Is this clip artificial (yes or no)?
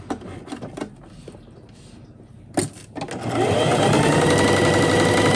no